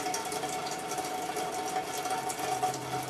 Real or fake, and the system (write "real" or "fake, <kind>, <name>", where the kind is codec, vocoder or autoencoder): real